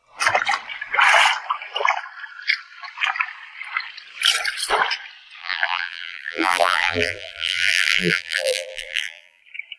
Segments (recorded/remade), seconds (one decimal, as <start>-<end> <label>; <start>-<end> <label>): 0.0-5.4 recorded; 5.4-9.4 remade; 9.4-9.8 recorded